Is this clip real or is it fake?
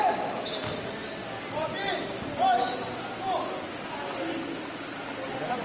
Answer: real